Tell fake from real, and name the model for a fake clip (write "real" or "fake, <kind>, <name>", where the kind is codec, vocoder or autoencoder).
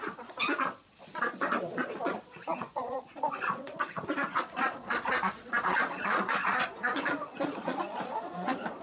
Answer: fake, vocoder, Vocos